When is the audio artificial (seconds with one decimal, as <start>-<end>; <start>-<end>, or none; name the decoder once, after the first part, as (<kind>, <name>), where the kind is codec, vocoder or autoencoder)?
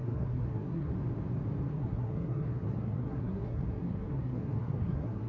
0.0-0.9 (codec, SNAC); 1.7-5.3